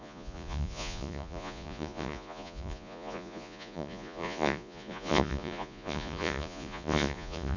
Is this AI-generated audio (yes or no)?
yes